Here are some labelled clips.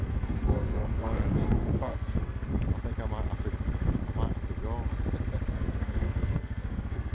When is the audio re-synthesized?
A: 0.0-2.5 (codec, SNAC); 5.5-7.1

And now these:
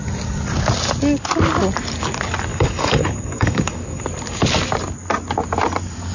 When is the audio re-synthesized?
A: 2.5-4.0 (codec, DAC)

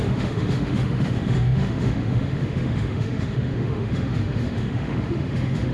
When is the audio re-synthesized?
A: 0.0-5.7 (autoencoder, DAC-VAE)

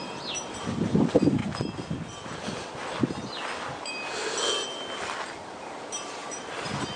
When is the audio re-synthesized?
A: 0.0-1.4 (vocoder, BigVGAN v2); 5.6-6.2

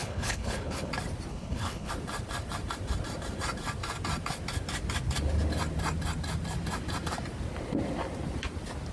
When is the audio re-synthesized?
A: 0.0-0.9 (codec, HILCodec); 1.3-1.9